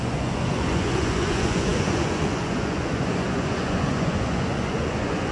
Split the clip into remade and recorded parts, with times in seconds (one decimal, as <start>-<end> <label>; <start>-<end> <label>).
0.0-5.3 remade